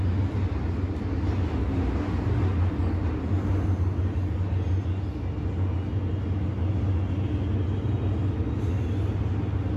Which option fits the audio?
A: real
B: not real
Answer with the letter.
A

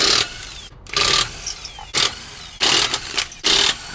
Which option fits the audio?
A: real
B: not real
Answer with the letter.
A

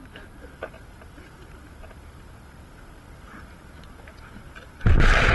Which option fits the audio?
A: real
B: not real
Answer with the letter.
A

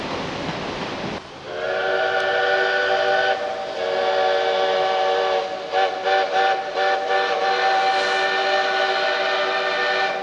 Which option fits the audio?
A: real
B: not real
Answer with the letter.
A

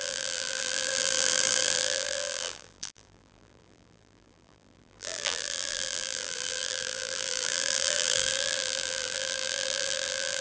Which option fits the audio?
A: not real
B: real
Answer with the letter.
A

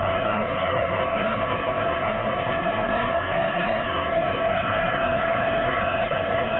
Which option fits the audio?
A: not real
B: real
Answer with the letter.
A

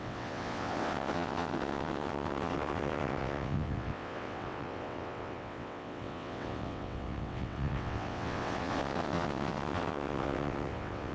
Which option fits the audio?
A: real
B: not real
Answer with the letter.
B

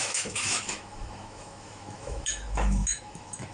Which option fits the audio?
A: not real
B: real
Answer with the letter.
A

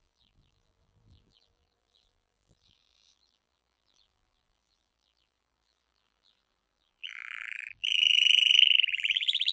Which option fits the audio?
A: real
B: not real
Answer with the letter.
B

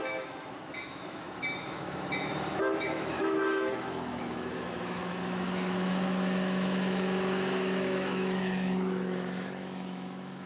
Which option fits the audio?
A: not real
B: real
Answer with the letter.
A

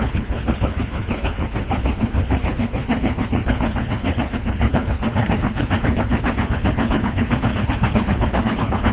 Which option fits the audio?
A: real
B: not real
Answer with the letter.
B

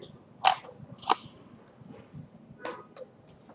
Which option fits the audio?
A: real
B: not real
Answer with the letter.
A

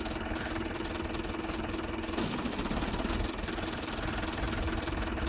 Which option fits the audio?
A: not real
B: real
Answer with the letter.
B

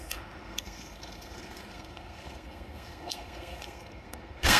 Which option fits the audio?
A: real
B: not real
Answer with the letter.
B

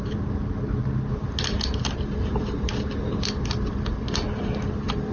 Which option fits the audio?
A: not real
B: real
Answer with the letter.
B